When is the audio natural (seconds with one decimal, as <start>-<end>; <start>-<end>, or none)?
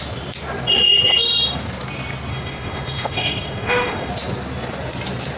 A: 0.0-2.3; 4.1-5.4